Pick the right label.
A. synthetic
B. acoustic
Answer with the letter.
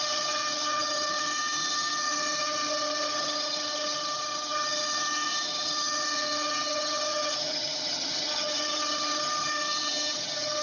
A